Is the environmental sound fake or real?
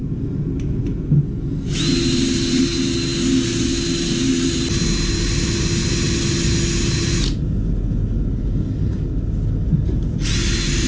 real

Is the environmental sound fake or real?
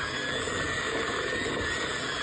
real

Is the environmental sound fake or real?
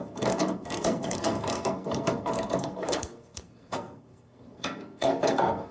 fake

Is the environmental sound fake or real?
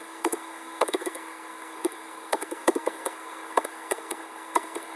fake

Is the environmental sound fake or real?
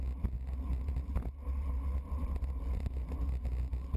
real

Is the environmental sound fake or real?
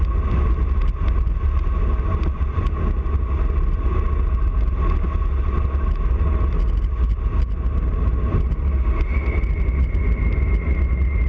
real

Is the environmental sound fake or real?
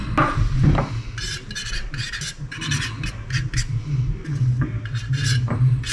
real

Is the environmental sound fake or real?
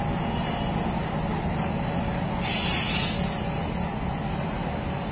real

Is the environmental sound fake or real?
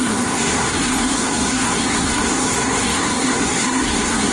fake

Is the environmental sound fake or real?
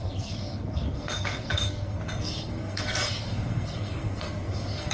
fake